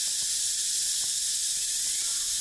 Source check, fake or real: real